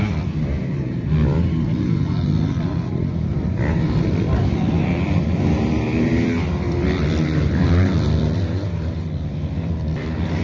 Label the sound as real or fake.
fake